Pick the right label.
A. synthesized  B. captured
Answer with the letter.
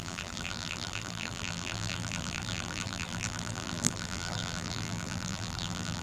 A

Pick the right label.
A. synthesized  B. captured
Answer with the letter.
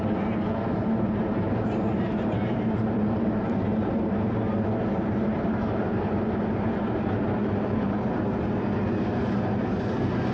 A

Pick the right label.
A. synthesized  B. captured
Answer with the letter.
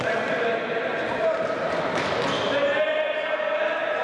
B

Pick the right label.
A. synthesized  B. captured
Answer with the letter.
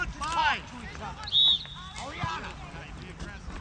B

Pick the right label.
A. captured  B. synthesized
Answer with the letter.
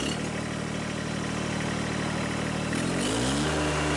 A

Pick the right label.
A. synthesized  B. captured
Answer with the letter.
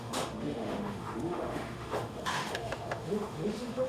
A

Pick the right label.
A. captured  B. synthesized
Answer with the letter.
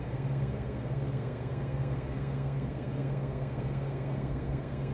B